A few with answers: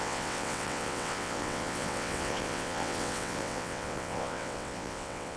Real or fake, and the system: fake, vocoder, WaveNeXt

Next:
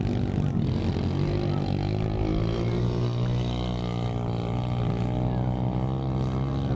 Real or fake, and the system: real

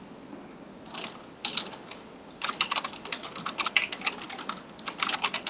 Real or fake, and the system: real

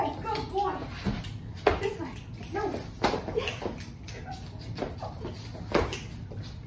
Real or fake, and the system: real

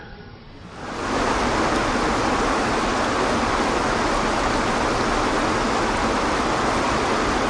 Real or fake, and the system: real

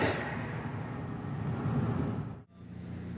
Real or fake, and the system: real